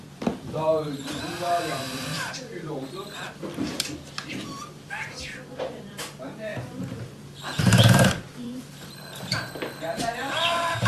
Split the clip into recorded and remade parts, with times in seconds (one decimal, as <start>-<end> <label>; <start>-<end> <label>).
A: 0.0-6.5 remade; 6.5-7.6 recorded; 7.6-10.9 remade